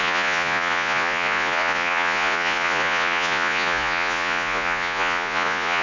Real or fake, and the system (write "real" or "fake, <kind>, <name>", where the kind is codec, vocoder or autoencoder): fake, vocoder, Vocos